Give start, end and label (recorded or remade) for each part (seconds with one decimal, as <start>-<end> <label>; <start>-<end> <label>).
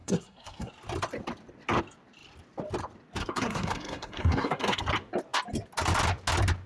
0.0-0.7 remade; 0.7-3.2 recorded; 3.2-4.8 remade; 4.8-6.7 recorded